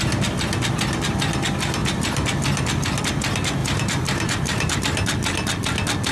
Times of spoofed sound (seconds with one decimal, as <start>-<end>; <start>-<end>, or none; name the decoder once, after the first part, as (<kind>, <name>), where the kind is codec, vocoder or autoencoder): 3.6-4.8 (vocoder, BigVGAN v2)